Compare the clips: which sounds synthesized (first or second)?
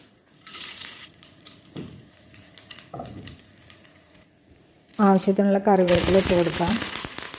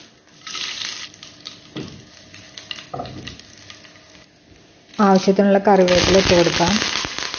first